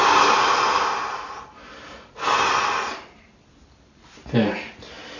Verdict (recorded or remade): recorded